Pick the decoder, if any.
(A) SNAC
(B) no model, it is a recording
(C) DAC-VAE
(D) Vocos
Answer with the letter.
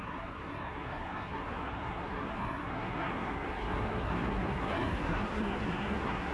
A